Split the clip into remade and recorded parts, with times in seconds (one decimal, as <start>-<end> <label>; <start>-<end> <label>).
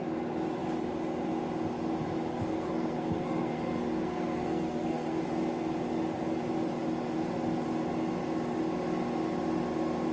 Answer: 0.0-2.3 recorded; 2.3-5.2 remade; 5.2-10.1 recorded